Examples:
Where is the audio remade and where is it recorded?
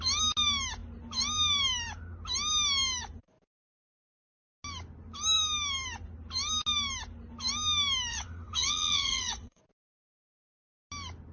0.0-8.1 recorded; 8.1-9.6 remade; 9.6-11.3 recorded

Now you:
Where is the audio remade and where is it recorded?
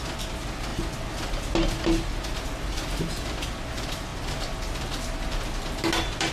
0.0-6.3 recorded